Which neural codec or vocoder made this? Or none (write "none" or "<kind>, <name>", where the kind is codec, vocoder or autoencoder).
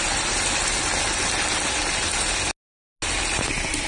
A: none